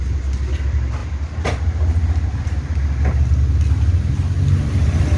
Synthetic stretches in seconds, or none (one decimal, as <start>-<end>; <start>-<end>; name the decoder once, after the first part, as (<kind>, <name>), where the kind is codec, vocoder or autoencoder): none